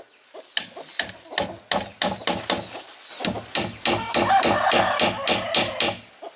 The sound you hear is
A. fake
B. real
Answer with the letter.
B